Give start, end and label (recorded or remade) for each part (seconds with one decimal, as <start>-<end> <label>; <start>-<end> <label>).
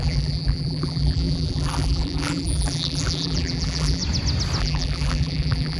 0.0-4.0 remade; 4.0-4.6 recorded; 4.6-5.8 remade